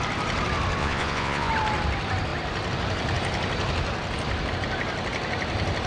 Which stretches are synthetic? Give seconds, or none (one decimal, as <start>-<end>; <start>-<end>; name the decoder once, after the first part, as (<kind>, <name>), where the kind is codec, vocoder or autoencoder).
0.8-1.5 (vocoder, Vocos)